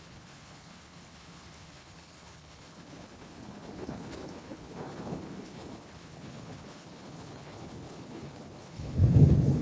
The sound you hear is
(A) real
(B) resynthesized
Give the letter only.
B